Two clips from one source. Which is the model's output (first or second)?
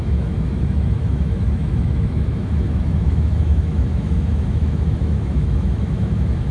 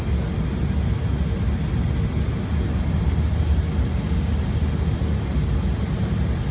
first